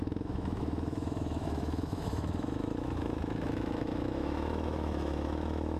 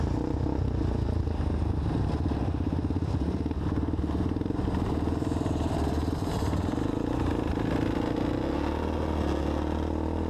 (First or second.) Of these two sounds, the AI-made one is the first